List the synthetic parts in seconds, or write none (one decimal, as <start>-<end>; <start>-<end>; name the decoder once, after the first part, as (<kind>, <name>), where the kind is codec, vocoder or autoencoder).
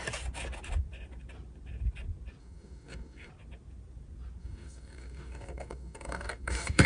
2.4-3.3 (codec, DAC); 4.4-6.9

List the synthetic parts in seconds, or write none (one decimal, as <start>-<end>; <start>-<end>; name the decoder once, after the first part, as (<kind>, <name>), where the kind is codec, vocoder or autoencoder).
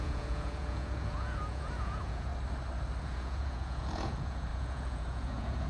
0.0-2.3 (vocoder, Vocos); 3.0-5.7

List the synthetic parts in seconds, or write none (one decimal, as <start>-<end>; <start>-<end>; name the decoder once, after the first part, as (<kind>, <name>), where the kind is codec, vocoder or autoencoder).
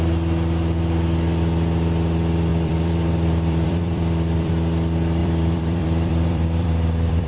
2.5-4.5 (vocoder, BigVGAN v2); 5.2-7.3